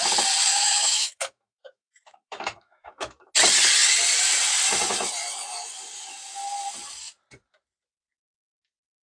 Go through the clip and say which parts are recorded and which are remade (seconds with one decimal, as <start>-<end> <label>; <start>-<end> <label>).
0.0-0.5 recorded; 0.5-3.3 remade; 3.3-9.0 recorded